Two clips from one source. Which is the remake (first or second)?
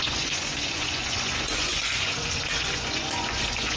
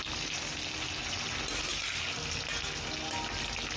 first